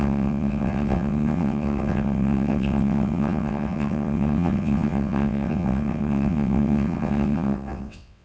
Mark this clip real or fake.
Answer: fake